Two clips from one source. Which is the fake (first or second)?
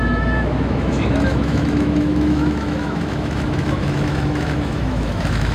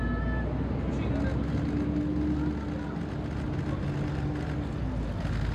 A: first